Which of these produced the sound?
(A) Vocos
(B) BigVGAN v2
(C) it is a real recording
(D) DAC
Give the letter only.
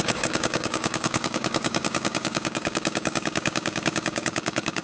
D